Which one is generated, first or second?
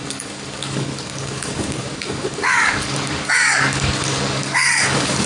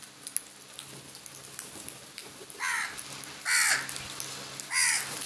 first